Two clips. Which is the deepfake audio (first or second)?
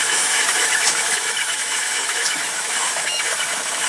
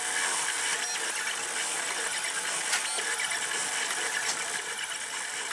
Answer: first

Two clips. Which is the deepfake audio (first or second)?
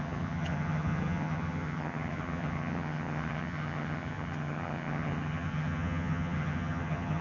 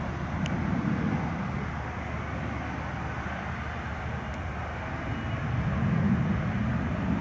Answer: first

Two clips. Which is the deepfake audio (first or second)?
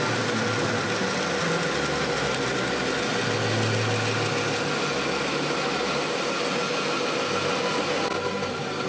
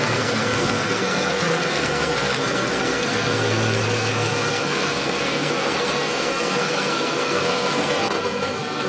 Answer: second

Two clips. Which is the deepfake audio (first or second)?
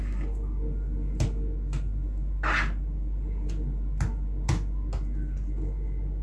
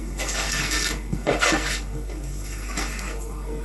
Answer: second